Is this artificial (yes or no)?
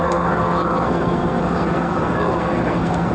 yes